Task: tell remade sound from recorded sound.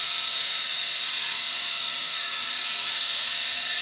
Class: remade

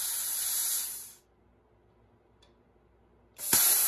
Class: recorded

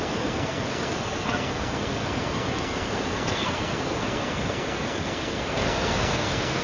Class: remade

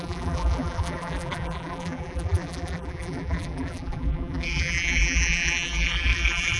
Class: remade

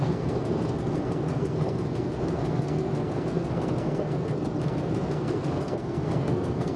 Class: remade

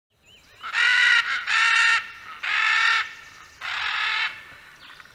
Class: recorded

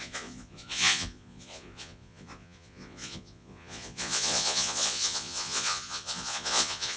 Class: remade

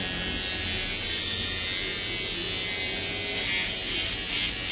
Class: recorded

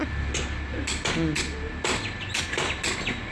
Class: recorded